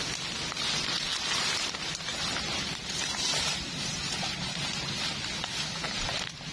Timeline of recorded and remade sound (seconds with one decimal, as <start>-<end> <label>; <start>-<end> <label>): 0.0-2.1 recorded; 2.1-4.6 remade; 4.6-6.5 recorded